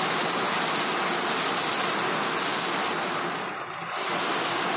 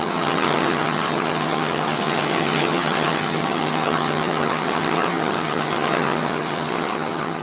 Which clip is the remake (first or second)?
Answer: second